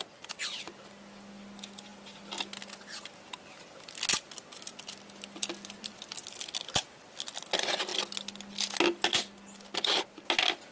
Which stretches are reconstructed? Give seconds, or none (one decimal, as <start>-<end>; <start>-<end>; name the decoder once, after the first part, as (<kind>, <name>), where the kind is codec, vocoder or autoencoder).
none